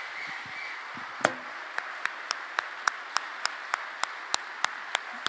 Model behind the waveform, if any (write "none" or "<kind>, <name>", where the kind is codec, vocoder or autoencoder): none